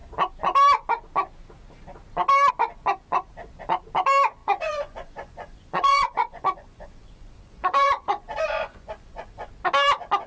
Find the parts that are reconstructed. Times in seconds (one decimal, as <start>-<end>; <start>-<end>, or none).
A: 4.4-9.5